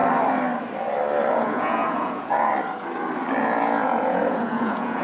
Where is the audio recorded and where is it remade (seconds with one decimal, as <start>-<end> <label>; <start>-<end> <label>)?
0.0-1.3 recorded; 1.3-2.5 remade; 2.5-3.4 recorded; 3.4-5.0 remade